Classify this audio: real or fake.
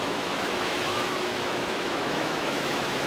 fake